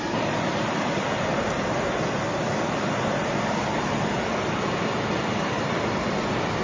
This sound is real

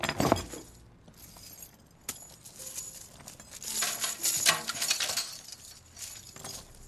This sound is real